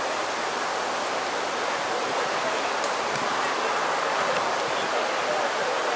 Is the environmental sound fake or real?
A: real